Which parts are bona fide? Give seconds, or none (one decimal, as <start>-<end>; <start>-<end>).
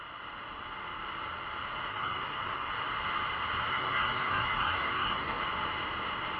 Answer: 0.0-1.9; 2.7-3.7; 5.4-6.4